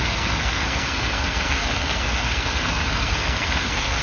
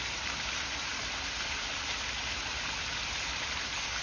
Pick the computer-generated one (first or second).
first